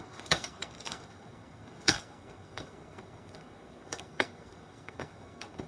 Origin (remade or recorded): remade